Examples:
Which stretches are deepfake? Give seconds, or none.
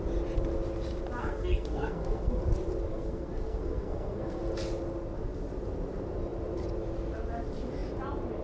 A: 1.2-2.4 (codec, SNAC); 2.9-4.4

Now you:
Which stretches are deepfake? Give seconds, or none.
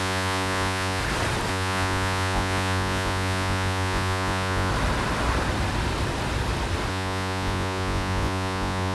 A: 0.0-1.0 (vocoder, Vocos); 1.5-4.7; 6.9-8.9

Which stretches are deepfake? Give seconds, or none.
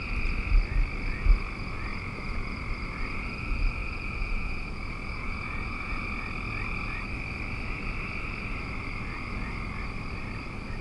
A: 1.9-2.6 (vocoder, Vocos); 3.8-5.9